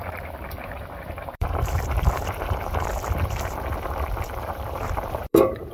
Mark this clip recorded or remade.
remade